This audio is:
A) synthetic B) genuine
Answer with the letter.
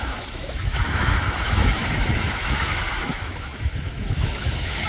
A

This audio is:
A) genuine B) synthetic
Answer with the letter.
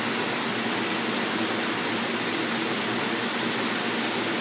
A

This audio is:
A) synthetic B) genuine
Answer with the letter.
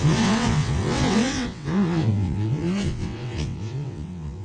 A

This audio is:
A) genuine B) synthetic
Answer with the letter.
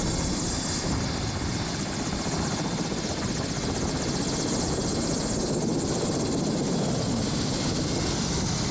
A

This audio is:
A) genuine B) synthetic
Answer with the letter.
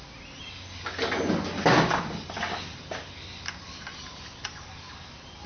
A